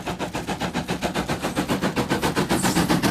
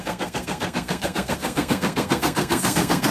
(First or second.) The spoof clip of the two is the second